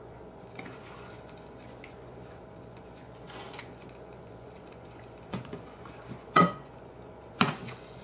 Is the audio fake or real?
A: fake